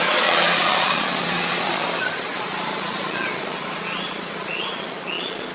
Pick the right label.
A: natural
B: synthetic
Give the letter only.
B